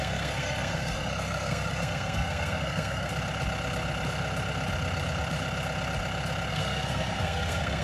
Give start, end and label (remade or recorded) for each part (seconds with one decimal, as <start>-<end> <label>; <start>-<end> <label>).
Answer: 0.0-3.1 remade; 3.1-6.5 recorded; 6.5-7.8 remade